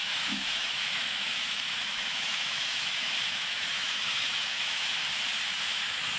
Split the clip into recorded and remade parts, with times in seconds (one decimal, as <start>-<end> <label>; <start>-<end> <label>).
0.0-5.0 remade; 5.0-5.7 recorded; 5.7-6.2 remade